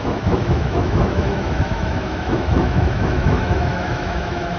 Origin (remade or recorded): remade